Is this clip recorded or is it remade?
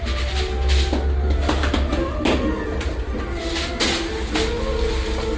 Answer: recorded